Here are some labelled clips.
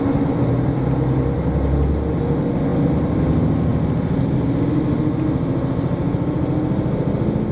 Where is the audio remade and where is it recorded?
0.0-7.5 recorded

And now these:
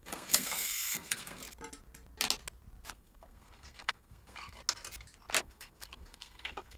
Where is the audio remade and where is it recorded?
0.0-1.4 remade; 1.4-2.9 recorded; 2.9-4.6 remade; 4.6-5.4 recorded; 5.4-6.8 remade